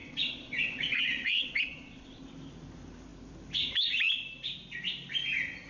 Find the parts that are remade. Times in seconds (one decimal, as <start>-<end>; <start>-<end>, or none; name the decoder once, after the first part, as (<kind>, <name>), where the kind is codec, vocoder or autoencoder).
0.0-2.2 (vocoder, WaveNeXt)